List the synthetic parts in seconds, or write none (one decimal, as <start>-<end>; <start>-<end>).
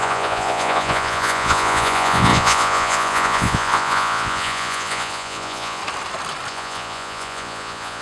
0.0-5.8; 6.5-8.0